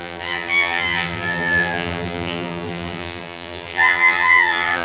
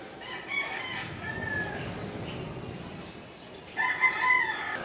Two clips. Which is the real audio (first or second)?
second